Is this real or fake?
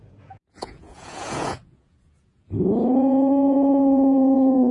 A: fake